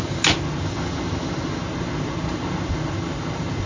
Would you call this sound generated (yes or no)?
no